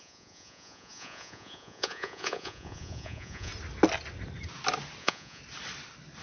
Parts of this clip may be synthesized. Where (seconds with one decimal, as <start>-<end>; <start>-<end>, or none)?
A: 0.0-3.5; 5.0-5.4